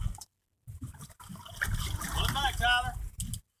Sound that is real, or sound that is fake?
real